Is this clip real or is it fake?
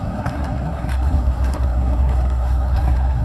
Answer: fake